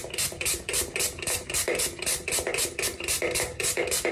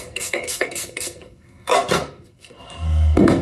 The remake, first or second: second